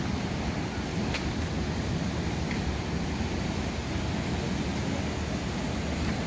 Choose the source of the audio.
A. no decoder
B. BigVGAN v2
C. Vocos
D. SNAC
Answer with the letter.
A